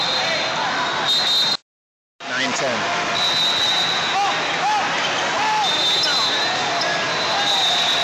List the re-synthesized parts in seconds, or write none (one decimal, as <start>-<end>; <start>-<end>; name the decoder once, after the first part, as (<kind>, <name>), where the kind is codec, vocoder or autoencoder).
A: none